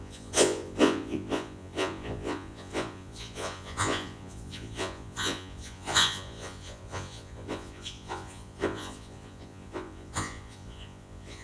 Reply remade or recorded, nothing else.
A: remade